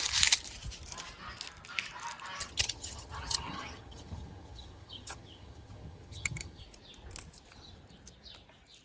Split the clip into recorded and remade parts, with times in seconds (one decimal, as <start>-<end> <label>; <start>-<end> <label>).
0.0-2.4 recorded; 2.4-6.6 remade; 6.6-8.8 recorded